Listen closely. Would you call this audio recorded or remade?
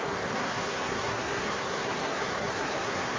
remade